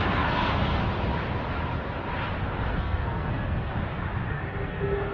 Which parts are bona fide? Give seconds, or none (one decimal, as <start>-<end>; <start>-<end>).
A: 0.8-2.7; 3.7-4.3